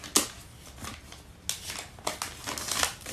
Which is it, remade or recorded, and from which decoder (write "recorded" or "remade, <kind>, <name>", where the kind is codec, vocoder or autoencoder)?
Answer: recorded